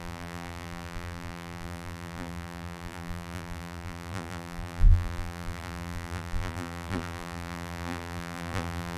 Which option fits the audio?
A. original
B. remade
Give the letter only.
B